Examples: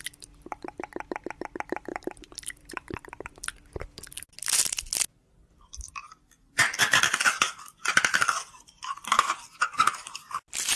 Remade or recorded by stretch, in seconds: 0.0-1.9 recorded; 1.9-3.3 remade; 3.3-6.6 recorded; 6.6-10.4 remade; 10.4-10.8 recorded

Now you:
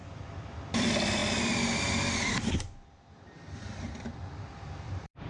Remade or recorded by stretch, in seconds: 0.0-0.7 recorded; 0.7-1.2 remade; 1.2-4.4 recorded; 4.4-5.3 remade

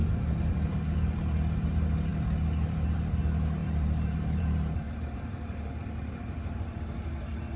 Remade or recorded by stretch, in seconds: 0.0-3.6 recorded; 3.6-6.8 remade; 6.8-7.6 recorded